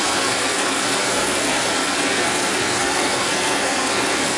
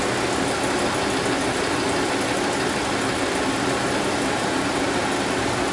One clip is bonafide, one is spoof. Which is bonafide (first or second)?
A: second